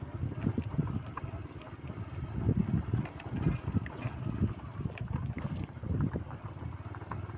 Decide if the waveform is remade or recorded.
recorded